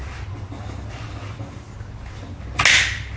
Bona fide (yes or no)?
yes